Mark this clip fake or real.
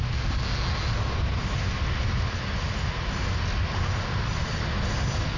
real